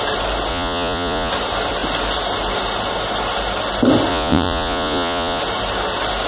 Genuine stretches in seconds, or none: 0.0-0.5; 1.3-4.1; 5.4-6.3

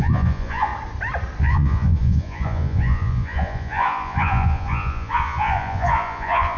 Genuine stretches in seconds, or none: 0.7-1.4

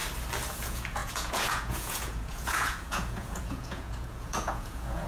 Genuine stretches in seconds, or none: 0.0-0.5

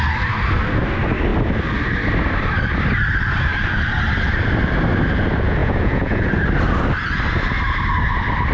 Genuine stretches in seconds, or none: 0.0-5.6; 6.3-8.5

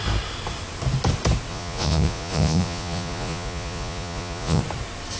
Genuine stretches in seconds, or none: 0.0-1.5; 4.6-5.2

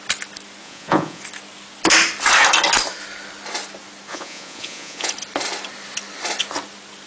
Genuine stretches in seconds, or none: 0.0-0.6; 1.2-4.1; 5.1-7.1

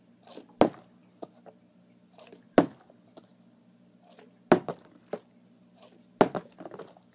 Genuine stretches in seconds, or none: 0.0-7.1